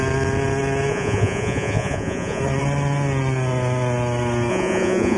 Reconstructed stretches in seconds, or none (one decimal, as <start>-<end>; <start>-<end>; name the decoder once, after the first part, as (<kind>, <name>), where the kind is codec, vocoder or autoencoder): 0.9-2.4 (vocoder, Vocos); 4.5-5.2

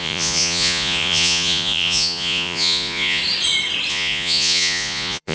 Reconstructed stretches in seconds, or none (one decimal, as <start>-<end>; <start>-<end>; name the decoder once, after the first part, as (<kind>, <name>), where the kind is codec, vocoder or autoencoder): 0.0-3.2 (vocoder, Vocos); 3.9-5.3